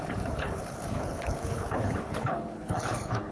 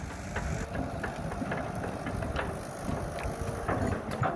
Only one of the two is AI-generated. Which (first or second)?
first